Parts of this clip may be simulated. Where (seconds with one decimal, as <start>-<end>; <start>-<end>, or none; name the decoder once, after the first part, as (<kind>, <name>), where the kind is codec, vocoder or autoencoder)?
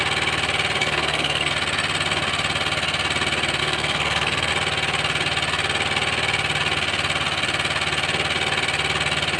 0.8-1.5 (codec, SNAC); 3.6-4.5